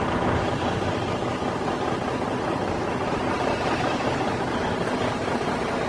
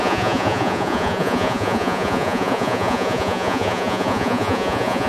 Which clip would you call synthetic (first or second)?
second